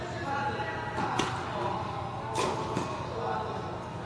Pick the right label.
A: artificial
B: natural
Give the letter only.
B